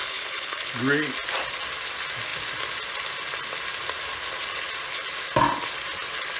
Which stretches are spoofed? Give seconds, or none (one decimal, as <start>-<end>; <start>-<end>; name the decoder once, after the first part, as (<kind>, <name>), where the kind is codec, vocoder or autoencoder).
0.0-0.7 (codec, HILCodec)